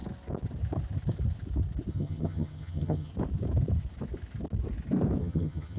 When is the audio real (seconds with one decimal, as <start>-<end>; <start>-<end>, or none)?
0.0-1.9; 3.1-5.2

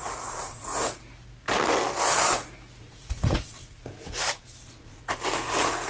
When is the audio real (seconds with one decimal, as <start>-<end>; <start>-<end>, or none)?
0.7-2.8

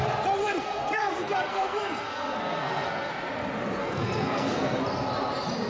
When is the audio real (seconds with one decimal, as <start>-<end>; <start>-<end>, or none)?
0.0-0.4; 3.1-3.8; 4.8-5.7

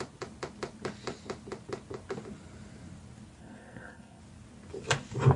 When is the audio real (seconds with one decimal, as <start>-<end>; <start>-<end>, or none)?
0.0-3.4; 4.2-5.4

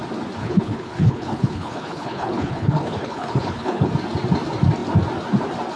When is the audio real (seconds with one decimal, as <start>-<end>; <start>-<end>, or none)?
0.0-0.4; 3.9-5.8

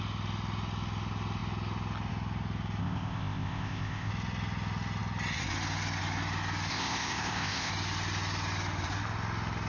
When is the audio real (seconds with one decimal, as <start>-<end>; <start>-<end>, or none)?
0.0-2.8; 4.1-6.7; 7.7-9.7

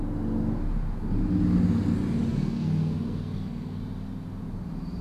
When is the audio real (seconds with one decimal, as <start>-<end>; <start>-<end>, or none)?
0.0-2.3; 3.8-5.0

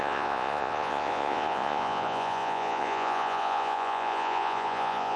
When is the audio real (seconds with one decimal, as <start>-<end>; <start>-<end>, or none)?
none